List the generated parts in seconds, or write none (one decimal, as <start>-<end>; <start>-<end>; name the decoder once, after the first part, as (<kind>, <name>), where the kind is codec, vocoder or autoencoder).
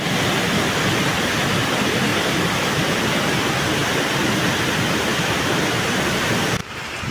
6.6-7.1 (vocoder, BigVGAN v2)